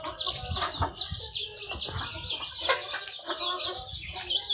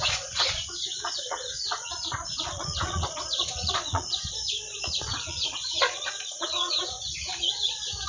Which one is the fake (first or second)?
second